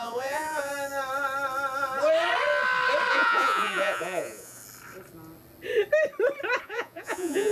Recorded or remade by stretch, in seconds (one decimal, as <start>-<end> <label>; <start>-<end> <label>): 0.0-0.7 remade; 0.7-3.1 recorded; 3.1-4.6 remade; 4.6-6.6 recorded; 6.6-7.5 remade